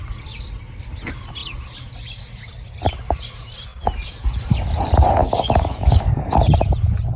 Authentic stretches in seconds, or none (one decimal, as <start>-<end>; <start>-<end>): 0.0-5.2; 6.4-7.2